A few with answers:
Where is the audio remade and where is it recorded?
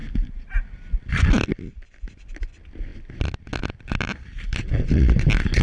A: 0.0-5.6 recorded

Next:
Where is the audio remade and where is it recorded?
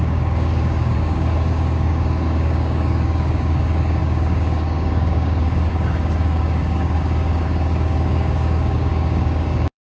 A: 0.0-9.8 remade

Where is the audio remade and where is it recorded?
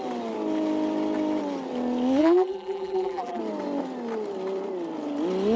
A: 0.0-2.2 recorded; 2.2-3.4 remade; 3.4-5.6 recorded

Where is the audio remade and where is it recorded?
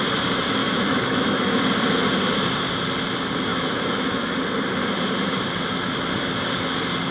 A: 0.0-0.6 recorded; 0.6-1.6 remade; 1.6-3.5 recorded; 3.5-4.3 remade; 4.3-7.1 recorded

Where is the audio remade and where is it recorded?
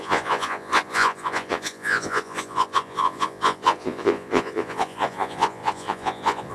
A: 0.0-6.5 remade